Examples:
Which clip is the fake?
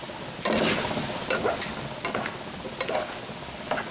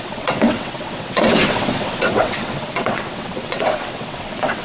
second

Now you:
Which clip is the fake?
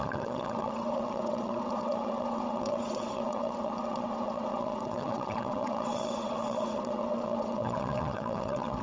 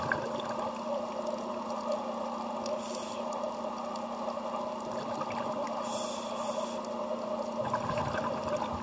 first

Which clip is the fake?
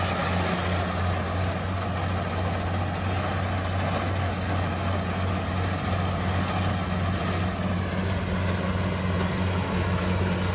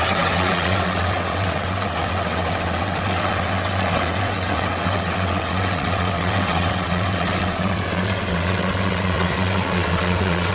second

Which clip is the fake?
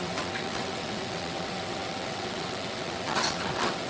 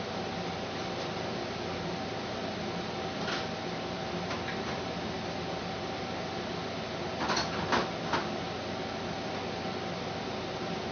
first